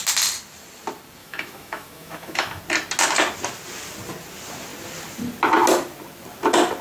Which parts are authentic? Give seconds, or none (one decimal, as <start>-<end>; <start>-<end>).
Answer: 0.0-1.2; 2.6-6.8